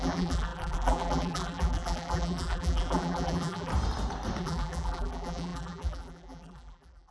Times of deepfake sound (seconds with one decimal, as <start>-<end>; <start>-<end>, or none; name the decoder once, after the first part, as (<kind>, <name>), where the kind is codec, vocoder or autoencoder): 0.0-3.7 (vocoder, BigVGAN v2); 4.4-7.1